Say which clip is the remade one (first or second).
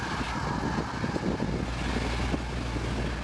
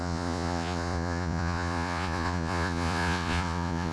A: second